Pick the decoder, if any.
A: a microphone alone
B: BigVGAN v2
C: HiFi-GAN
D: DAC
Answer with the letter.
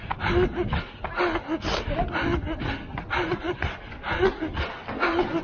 A